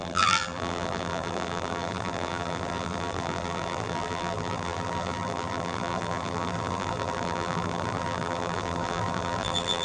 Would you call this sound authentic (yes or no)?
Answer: no